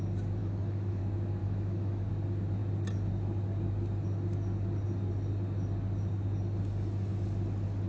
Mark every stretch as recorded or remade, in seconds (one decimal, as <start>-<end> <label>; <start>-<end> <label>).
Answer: 0.0-0.4 recorded; 0.4-1.0 remade; 1.0-1.4 recorded; 1.4-2.1 remade; 2.1-7.9 recorded